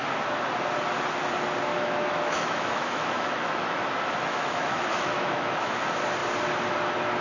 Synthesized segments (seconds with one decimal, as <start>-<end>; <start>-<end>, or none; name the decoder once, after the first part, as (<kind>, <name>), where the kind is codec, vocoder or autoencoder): 1.7-3.9 (autoencoder, DAC-VAE); 4.3-5.8